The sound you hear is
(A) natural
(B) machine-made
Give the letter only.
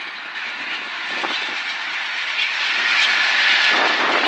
A